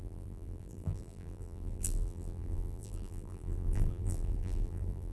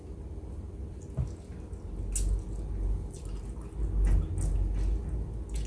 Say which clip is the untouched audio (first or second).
second